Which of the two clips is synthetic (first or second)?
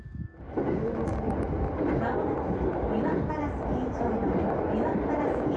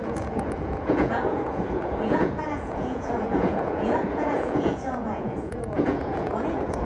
second